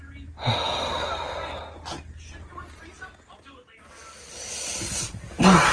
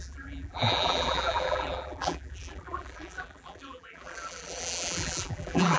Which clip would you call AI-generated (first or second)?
second